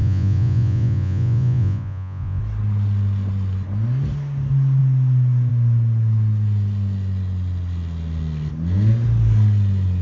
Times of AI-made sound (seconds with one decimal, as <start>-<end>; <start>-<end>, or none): 0.0-2.4

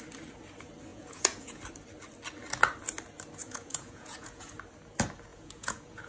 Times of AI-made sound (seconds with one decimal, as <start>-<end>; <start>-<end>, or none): 0.9-1.6; 3.4-4.5; 5.3-6.1

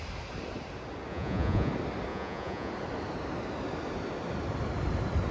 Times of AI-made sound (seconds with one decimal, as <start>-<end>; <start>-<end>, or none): 1.1-1.7; 2.1-2.7

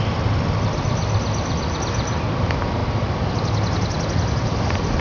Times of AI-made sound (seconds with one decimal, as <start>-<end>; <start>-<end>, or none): none